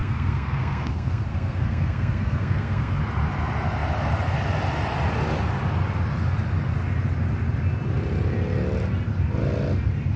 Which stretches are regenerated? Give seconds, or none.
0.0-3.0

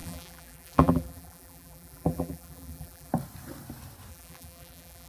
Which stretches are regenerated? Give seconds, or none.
0.0-3.1; 4.1-5.1

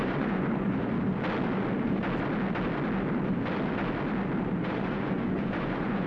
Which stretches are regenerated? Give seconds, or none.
0.0-0.9; 4.6-6.1

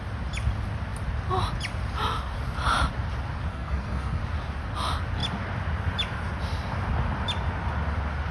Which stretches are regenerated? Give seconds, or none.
3.5-4.2

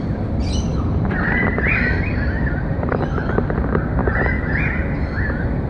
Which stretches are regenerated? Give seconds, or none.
0.7-2.9

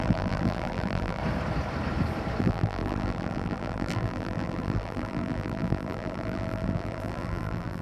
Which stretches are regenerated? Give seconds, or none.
0.0-1.2; 2.4-7.8

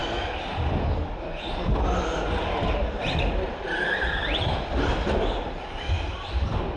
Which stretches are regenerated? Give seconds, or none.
none

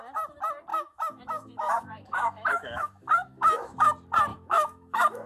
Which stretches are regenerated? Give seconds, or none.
0.7-3.9; 4.3-5.3